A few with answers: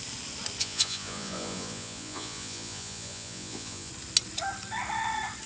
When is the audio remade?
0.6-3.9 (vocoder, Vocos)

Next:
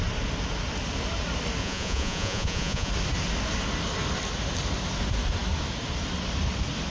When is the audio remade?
1.6-2.9 (vocoder, Vocos)

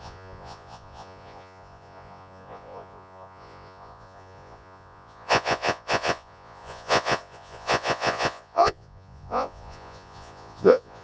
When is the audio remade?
0.0-11.0 (vocoder, Vocos)

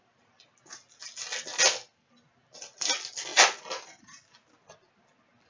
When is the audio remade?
none

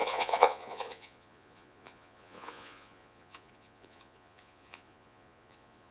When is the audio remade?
0.0-5.9 (vocoder, Vocos)

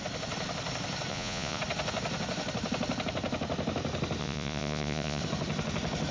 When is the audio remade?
1.1-1.6 (vocoder, Vocos); 4.2-5.2